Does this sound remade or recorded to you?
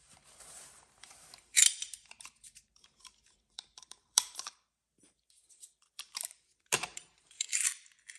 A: remade